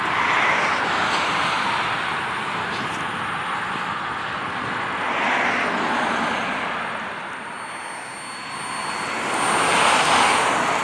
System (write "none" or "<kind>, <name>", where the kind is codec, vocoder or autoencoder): none